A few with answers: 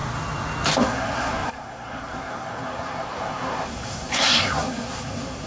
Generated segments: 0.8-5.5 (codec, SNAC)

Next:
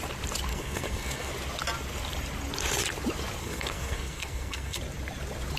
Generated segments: 0.5-1.3 (codec, SNAC); 3.4-4.8